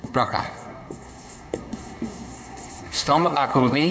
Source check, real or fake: fake